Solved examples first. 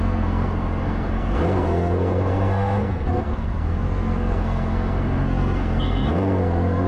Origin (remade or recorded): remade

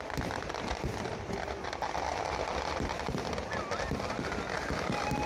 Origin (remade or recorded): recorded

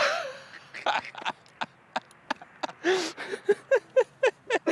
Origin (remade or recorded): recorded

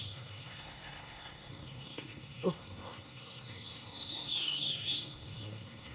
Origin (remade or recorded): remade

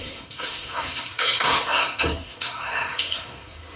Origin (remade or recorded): remade